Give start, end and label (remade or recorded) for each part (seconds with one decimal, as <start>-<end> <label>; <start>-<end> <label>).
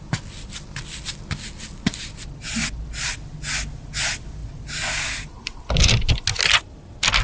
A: 0.0-7.2 recorded